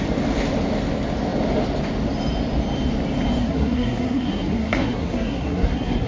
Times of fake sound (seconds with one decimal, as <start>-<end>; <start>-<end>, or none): 3.4-6.1